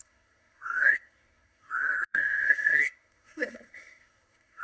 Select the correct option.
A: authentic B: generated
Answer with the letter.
B